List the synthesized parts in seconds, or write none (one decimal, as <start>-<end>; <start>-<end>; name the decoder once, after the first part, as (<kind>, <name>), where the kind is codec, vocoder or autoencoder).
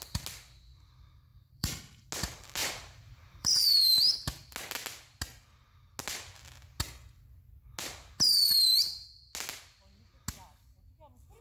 1.3-2.1 (vocoder, BigVGAN v2); 2.6-3.5